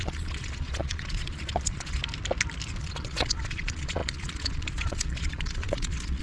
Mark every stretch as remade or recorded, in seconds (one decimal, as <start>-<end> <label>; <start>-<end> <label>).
0.0-2.0 remade; 2.0-2.8 recorded; 2.8-6.2 remade